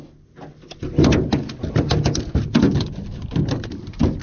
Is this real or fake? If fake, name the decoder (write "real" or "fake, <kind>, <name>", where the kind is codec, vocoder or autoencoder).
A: real